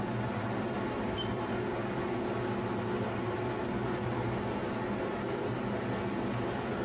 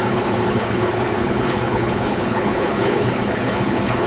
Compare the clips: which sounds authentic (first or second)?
first